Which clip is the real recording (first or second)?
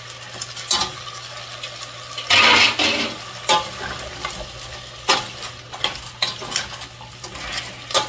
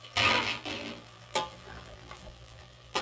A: first